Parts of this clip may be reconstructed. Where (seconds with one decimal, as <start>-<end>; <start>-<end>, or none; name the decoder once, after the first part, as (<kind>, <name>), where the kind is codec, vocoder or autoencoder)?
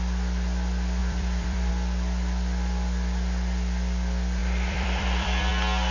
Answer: 1.0-1.7 (vocoder, BigVGAN v2); 4.4-5.5